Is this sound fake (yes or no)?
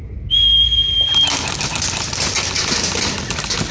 no